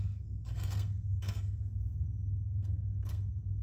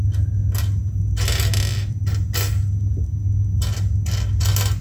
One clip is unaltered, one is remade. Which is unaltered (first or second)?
second